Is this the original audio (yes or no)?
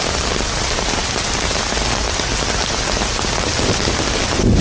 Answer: yes